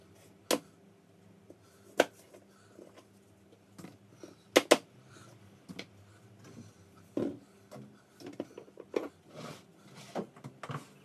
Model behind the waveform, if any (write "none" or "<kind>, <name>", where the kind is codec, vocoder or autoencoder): none